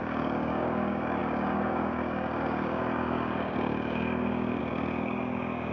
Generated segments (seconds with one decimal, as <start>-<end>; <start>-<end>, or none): 0.0-5.7